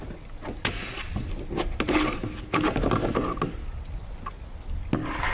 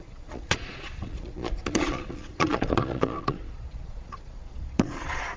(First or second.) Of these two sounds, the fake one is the second